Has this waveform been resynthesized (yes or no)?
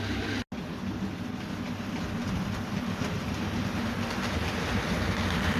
no